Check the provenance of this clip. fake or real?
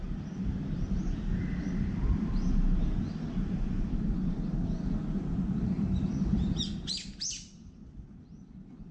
real